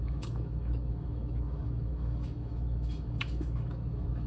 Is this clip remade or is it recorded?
remade